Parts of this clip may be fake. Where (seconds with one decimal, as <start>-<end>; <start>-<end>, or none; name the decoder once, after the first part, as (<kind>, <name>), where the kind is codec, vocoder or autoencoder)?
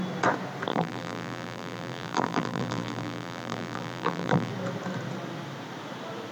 0.7-4.5 (vocoder, BigVGAN v2)